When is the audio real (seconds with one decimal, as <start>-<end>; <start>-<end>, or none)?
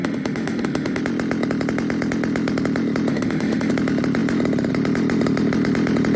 1.0-3.1; 3.7-6.2